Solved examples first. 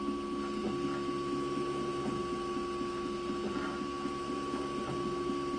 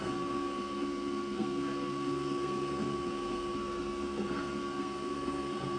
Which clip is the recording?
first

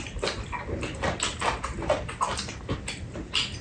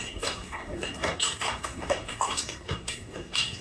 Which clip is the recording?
first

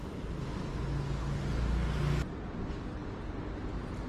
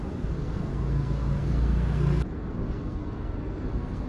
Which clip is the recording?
first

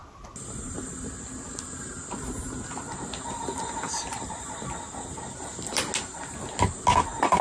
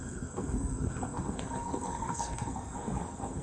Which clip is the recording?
first